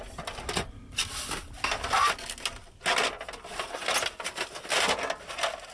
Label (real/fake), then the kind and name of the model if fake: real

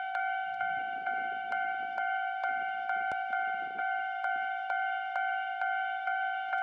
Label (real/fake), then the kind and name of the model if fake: fake, autoencoder, DAC-VAE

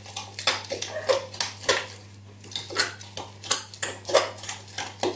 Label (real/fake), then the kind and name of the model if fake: real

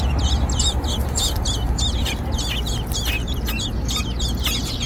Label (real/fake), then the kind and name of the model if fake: real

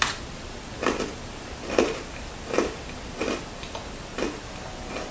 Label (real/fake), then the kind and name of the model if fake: real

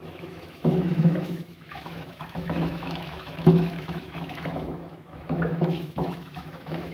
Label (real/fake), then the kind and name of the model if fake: fake, autoencoder, DAC-VAE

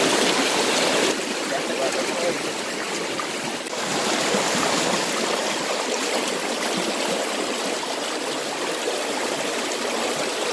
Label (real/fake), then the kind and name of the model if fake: real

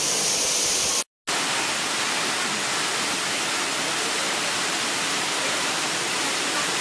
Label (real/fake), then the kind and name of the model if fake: real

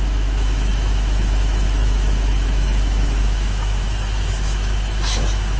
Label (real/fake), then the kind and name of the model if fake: fake, autoencoder, DAC-VAE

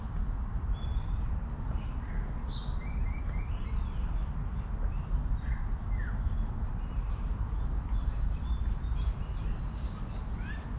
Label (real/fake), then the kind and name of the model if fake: real